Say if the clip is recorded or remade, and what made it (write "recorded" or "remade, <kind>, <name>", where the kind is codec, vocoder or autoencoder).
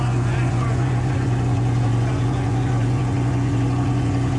remade, vocoder, Vocos